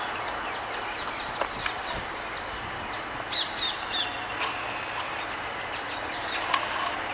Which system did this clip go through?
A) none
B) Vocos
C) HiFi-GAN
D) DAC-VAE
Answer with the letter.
A